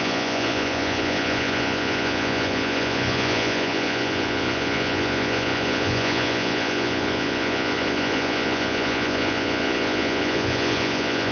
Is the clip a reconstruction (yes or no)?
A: yes